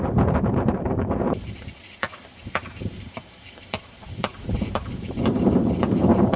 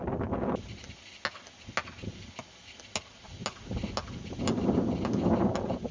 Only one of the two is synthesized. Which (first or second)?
first